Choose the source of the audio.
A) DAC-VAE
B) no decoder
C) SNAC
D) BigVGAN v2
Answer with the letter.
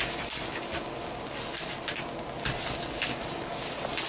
B